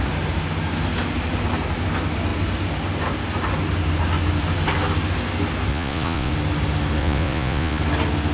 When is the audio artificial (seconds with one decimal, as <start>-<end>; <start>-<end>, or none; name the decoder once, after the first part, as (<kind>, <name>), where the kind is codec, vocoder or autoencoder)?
5.7-6.3 (vocoder, Vocos); 7.0-7.8